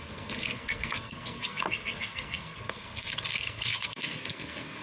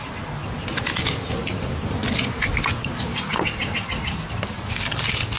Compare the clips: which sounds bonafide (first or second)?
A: second